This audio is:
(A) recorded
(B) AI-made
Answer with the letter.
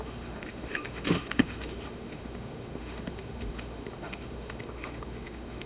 B